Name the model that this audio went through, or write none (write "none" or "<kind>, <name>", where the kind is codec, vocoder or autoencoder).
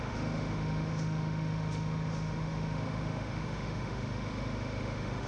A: autoencoder, DAC-VAE